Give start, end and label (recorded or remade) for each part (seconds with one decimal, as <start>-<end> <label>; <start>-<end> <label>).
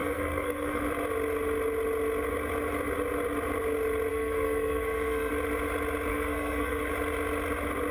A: 0.0-0.8 remade; 0.8-4.1 recorded; 4.1-5.3 remade; 5.3-6.1 recorded; 6.1-6.9 remade; 6.9-7.9 recorded